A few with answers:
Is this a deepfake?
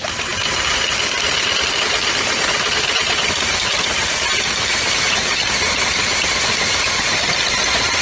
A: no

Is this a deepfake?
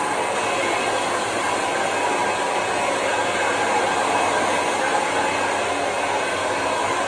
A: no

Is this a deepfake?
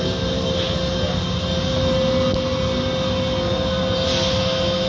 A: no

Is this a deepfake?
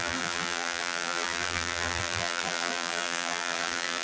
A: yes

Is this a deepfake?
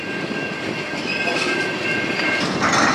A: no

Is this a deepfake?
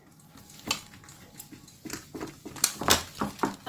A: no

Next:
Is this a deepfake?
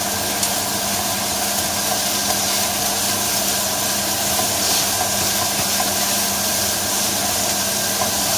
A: no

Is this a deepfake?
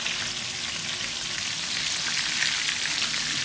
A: no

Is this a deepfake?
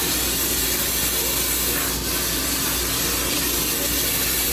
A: no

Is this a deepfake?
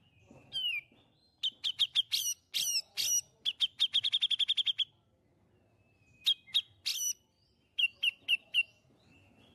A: no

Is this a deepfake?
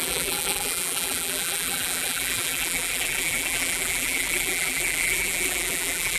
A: yes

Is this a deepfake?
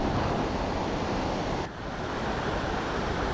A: no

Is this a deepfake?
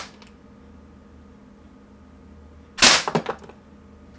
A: no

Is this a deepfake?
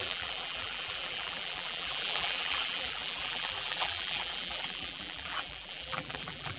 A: yes